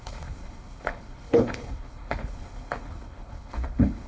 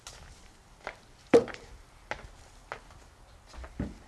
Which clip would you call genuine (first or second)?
second